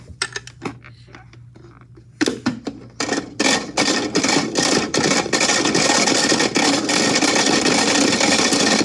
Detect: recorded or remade recorded